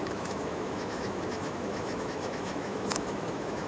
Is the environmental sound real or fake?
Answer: fake